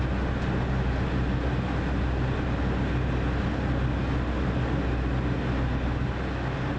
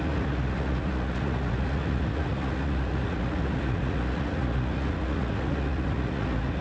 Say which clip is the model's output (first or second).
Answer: second